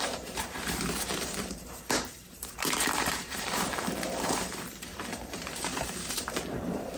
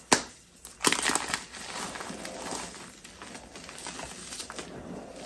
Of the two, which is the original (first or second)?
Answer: second